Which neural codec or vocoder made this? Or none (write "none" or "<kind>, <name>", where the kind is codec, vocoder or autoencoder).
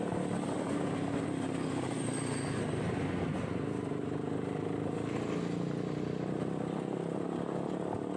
none